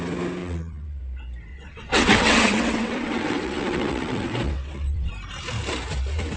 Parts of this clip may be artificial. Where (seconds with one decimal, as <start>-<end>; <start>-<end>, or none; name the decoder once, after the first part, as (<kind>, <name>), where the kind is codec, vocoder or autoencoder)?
0.4-1.0 (vocoder, WaveNeXt); 1.5-5.1

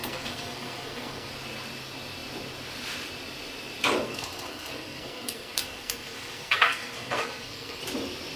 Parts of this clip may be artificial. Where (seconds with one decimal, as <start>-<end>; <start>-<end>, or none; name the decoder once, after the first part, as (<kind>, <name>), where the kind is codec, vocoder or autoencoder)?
0.0-1.3 (codec, SNAC); 4.0-7.8

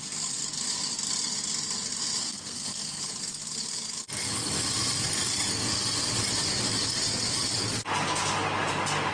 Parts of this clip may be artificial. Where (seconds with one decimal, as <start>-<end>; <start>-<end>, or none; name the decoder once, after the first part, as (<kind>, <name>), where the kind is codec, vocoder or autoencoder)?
2.2-3.0 (codec, SNAC)

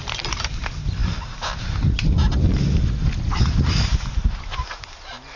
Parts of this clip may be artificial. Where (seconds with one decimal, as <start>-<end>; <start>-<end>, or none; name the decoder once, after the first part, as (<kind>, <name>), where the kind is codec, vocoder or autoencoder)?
none

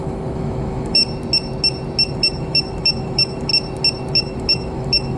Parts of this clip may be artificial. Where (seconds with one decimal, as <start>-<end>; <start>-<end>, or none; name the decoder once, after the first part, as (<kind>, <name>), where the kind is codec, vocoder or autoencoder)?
0.0-1.0 (autoencoder, DAC-VAE); 2.1-3.5; 4.1-5.2

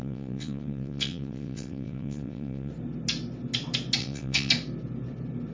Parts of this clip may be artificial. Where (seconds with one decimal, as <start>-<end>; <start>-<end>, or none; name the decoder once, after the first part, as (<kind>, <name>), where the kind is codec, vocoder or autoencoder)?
0.0-2.7 (vocoder, WaveNeXt); 4.0-4.5

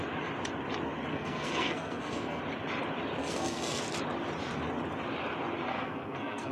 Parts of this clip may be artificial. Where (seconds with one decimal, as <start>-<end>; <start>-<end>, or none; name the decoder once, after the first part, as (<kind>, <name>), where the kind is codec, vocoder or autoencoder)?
1.1-2.4 (codec, SNAC); 3.2-3.8; 5.7-6.5